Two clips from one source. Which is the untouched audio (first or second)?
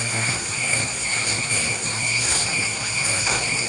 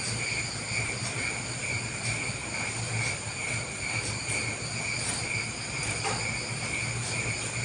second